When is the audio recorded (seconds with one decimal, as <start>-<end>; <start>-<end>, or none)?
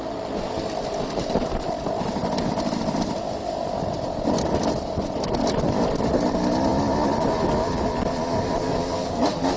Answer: 0.0-9.6